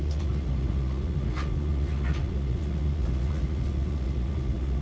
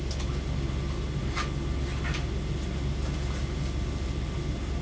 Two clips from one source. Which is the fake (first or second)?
first